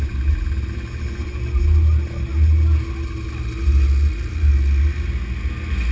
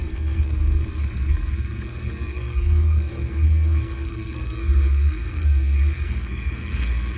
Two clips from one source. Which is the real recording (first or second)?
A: first